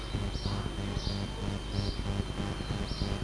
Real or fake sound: real